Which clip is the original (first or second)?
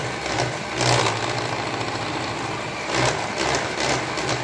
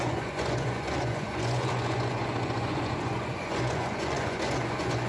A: first